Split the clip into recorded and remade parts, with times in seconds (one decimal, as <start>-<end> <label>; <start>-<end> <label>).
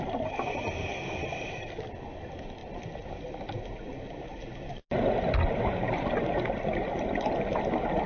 0.0-8.1 recorded